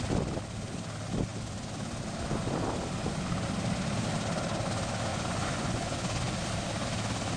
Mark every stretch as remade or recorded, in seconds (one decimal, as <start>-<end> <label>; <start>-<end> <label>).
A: 0.0-5.1 recorded; 5.1-6.4 remade; 6.4-7.4 recorded

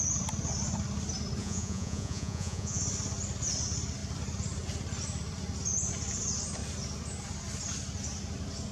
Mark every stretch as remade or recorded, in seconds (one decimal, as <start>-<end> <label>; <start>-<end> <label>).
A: 0.0-1.4 recorded; 1.4-2.8 remade; 2.8-8.7 recorded

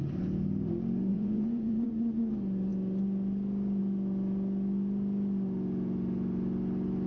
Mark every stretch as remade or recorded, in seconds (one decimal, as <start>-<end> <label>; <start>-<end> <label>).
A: 0.0-1.1 recorded; 1.1-1.9 remade; 1.9-7.1 recorded

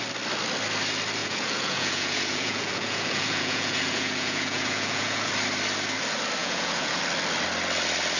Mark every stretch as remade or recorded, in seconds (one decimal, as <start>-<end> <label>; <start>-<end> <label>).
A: 0.0-1.2 recorded; 1.2-5.3 remade; 5.3-6.4 recorded; 6.4-7.0 remade; 7.0-8.2 recorded